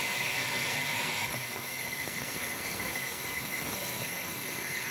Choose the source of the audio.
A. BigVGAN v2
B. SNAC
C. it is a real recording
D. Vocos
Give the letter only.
B